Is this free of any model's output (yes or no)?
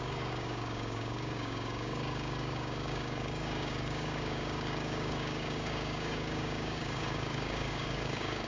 no